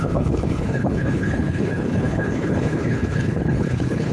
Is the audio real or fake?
fake